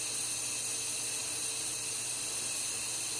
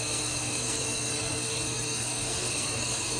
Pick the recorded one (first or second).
first